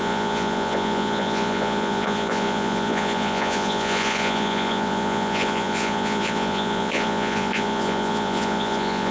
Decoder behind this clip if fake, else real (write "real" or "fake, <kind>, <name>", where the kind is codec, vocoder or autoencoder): fake, vocoder, Vocos